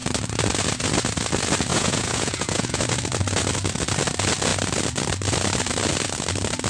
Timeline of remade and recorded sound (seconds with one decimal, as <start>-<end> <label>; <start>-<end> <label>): 0.0-1.7 recorded; 1.7-2.8 remade; 2.8-6.7 recorded